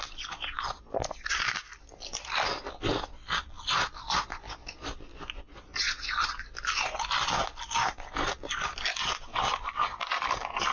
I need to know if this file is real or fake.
real